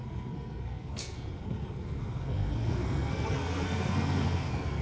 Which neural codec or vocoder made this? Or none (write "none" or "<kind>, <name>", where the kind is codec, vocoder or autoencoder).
codec, SNAC